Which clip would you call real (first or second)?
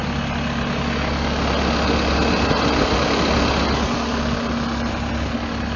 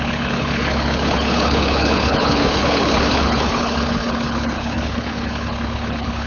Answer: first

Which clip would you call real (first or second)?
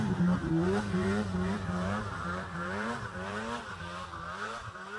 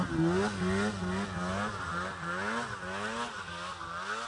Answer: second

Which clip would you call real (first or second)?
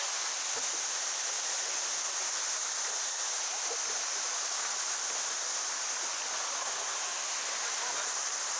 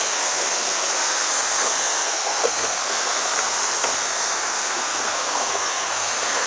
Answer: first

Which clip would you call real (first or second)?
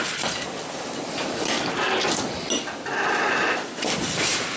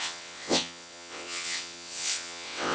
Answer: first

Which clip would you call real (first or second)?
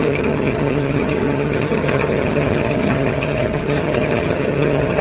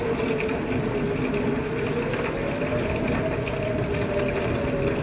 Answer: second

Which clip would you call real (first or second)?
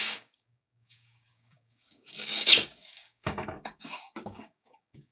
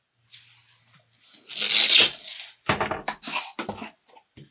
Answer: second